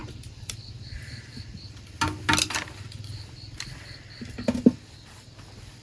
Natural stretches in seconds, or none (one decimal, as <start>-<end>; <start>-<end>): 0.0-5.8